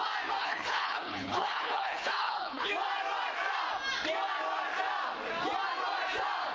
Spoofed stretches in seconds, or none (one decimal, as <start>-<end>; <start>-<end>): 0.4-2.7